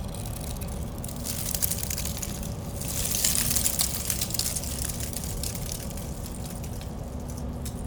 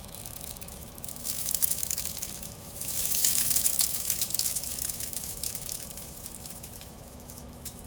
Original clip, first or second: first